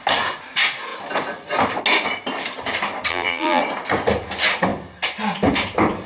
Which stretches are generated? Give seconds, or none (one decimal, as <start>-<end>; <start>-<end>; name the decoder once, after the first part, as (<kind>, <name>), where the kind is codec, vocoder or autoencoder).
3.1-3.6 (vocoder, BigVGAN v2)